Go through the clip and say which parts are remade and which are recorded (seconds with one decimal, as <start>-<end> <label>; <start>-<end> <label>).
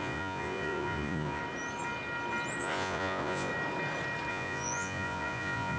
0.0-1.4 remade; 1.4-2.6 recorded; 2.6-3.5 remade; 3.5-4.3 recorded; 4.3-5.8 remade